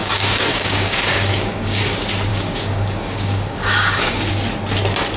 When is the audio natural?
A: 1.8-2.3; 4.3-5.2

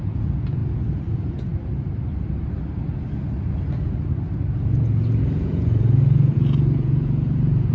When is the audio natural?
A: 0.6-1.1; 1.5-4.5